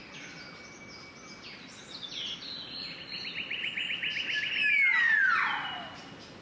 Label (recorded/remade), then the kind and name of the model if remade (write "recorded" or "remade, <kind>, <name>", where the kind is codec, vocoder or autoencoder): recorded